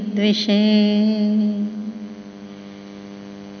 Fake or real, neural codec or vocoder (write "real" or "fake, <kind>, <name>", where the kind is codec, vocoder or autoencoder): real